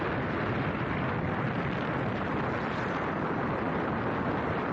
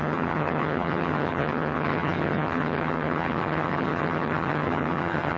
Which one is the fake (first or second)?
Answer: second